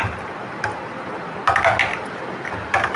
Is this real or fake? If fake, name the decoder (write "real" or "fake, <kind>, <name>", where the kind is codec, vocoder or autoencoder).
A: real